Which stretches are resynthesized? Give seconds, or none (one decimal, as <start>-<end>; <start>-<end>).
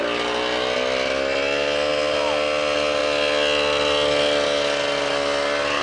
none